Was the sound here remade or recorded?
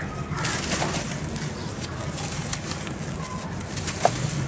recorded